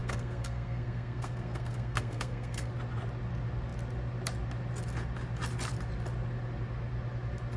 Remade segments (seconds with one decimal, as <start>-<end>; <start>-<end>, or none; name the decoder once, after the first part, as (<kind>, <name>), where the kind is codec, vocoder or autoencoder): 0.0-2.7 (codec, SNAC)